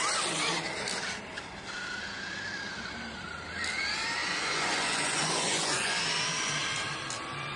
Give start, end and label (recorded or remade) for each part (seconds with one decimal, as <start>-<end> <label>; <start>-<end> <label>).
0.0-4.2 recorded; 4.2-6.0 remade; 6.0-7.6 recorded